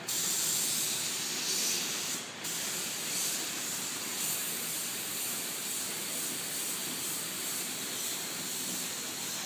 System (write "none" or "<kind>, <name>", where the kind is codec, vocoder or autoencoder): none